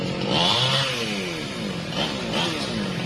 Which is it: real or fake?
real